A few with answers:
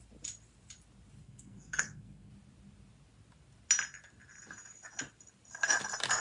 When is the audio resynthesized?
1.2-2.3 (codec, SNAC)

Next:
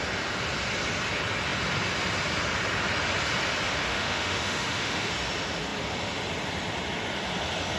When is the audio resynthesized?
3.9-5.1 (autoencoder, DAC-VAE)

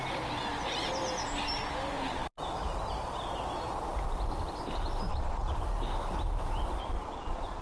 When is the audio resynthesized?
5.1-5.6 (vocoder, Vocos); 6.8-7.6

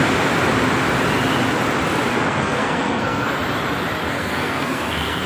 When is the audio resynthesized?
2.1-3.3 (codec, SNAC); 4.0-5.3

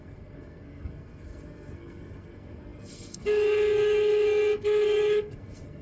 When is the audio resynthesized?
0.0-5.8 (codec, SNAC)

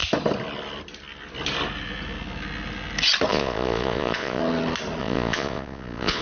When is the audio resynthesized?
3.3-4.4 (vocoder, Vocos); 5.0-6.2

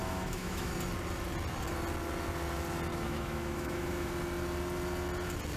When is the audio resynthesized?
0.0-0.7 (autoencoder, DAC-VAE); 2.9-4.1